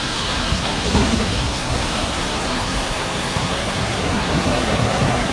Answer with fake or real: fake